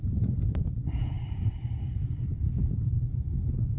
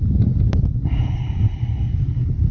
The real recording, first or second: second